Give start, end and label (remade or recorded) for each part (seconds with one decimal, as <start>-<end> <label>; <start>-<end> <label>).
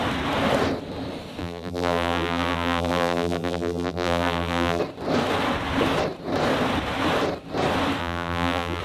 0.0-1.4 recorded; 1.4-4.8 remade; 4.8-8.0 recorded; 8.0-8.8 remade